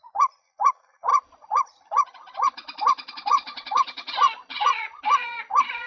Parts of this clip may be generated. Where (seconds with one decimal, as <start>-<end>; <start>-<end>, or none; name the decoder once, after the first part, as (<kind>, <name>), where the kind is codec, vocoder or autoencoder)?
0.0-5.9 (vocoder, Vocos)